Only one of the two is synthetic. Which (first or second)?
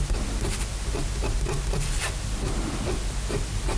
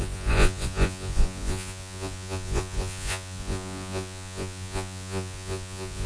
second